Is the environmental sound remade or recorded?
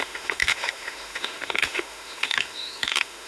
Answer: remade